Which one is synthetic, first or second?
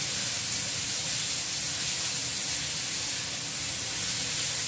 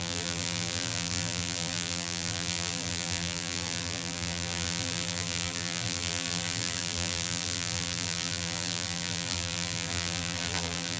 second